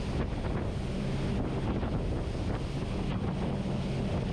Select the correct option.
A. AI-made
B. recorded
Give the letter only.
B